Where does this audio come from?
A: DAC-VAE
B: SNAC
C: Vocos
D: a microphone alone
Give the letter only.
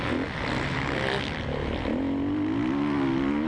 D